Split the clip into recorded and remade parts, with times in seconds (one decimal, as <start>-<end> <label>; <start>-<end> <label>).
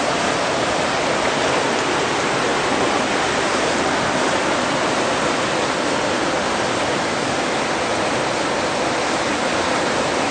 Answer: 0.0-10.3 recorded